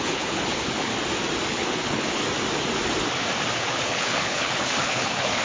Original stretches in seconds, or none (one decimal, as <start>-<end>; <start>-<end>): 0.9-1.5; 2.2-3.5